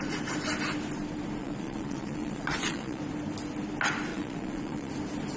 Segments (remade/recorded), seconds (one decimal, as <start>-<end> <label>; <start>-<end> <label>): 0.0-1.4 recorded; 1.4-3.0 remade; 3.0-4.1 recorded; 4.1-4.9 remade; 4.9-5.4 recorded